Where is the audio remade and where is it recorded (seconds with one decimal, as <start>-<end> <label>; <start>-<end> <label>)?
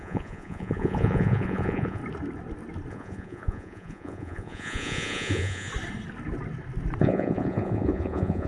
0.0-2.0 remade; 2.0-2.9 recorded; 2.9-5.7 remade; 5.7-7.0 recorded; 7.0-8.5 remade